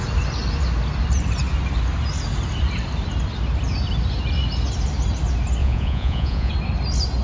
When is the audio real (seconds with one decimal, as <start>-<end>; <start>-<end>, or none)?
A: 0.0-5.6; 6.5-7.2

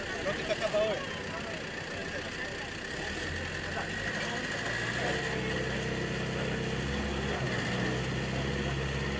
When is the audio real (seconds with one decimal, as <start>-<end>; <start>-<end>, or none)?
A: 0.0-9.2